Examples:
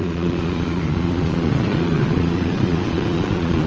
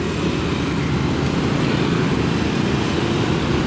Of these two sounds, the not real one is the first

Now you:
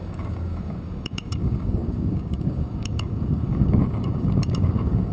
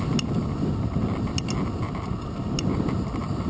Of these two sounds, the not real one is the first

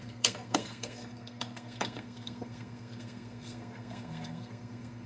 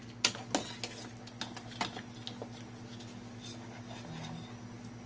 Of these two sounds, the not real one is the first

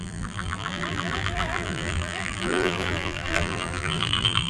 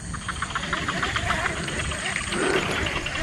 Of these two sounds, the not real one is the first